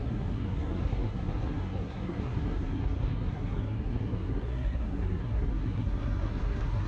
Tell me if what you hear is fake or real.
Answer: fake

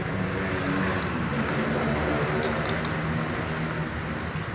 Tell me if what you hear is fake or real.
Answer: real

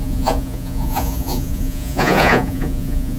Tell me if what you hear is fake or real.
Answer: fake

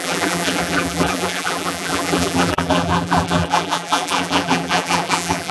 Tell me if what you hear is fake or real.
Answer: fake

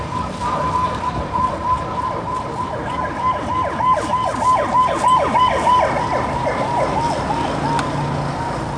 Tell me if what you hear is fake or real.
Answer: real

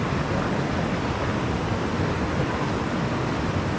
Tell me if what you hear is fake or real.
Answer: real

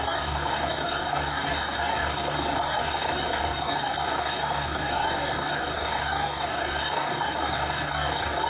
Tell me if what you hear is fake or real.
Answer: fake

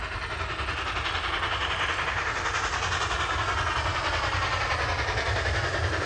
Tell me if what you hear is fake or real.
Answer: real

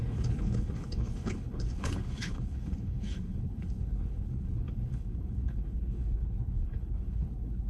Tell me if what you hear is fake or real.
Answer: fake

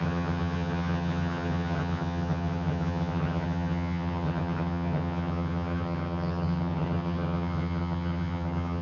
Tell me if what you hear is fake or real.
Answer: fake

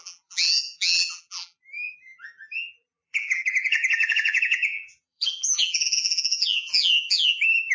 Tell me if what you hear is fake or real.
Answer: fake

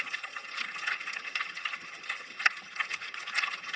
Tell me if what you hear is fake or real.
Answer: fake